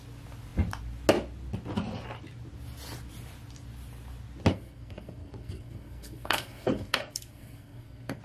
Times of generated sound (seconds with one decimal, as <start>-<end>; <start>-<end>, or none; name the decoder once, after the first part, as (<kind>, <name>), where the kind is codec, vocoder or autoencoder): 4.5-8.2 (codec, SNAC)